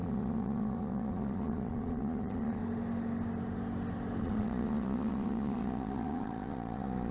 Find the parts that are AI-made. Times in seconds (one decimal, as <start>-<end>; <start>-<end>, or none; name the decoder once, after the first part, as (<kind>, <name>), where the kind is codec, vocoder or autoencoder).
0.0-2.6 (vocoder, Vocos); 4.2-7.1